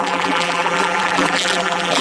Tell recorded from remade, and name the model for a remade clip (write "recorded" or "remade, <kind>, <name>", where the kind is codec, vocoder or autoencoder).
remade, vocoder, BigVGAN v2